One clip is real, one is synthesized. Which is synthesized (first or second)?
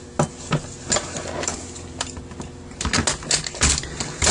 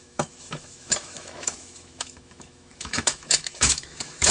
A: second